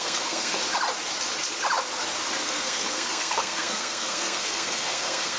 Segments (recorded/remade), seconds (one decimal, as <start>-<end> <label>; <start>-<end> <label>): 0.0-0.6 remade; 0.6-2.4 recorded; 2.4-5.4 remade